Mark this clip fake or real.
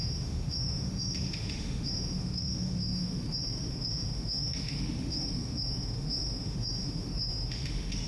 fake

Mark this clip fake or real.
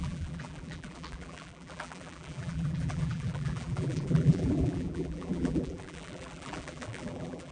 fake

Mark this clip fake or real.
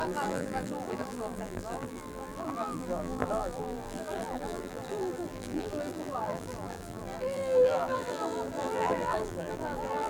fake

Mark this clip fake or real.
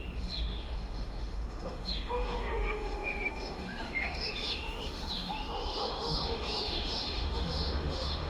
fake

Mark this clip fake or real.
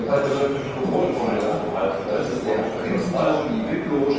real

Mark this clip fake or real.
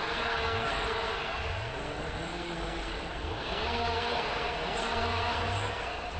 fake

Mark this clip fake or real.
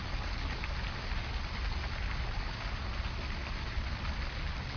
real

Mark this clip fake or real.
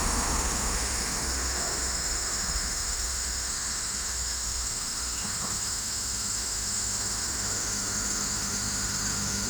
fake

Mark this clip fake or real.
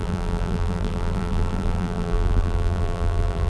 fake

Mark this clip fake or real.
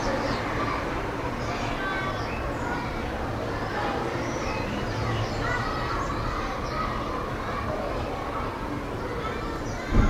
real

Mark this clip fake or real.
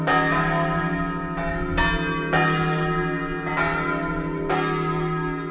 real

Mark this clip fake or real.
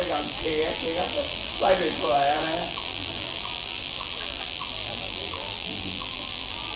fake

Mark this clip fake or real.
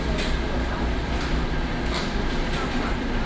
real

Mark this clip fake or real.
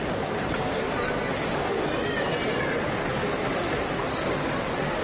real